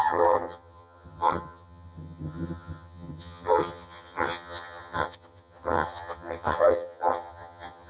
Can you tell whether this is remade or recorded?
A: remade